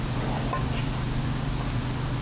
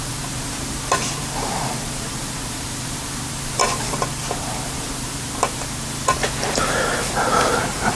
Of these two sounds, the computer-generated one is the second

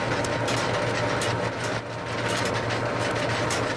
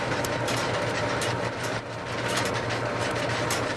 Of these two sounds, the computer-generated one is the second